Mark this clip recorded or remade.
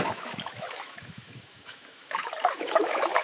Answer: remade